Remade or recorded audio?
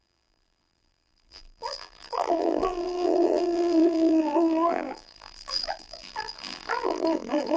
remade